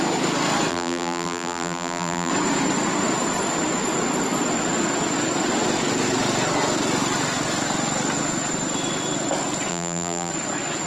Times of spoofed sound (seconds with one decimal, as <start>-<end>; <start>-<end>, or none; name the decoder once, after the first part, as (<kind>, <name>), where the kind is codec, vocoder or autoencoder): 0.7-2.3 (vocoder, BigVGAN v2); 9.7-10.3